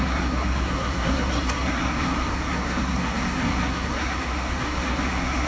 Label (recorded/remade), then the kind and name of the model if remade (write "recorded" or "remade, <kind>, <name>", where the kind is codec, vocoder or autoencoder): remade, codec, SNAC